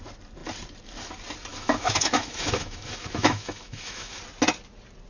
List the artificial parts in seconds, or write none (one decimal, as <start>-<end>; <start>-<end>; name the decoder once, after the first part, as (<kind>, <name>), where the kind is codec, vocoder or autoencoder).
1.5-4.2 (autoencoder, DAC-VAE)